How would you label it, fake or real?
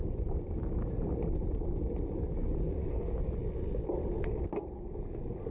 real